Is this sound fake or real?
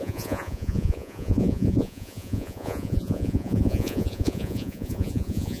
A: fake